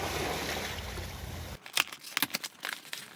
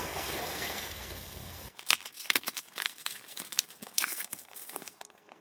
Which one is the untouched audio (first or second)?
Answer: first